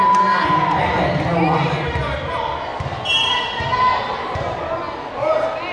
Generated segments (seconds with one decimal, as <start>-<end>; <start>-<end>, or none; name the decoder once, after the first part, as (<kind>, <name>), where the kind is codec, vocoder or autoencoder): none